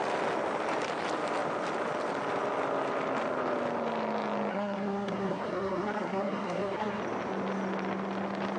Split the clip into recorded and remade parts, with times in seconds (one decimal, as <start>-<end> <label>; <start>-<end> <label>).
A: 0.0-4.5 recorded; 4.5-7.0 remade; 7.0-8.6 recorded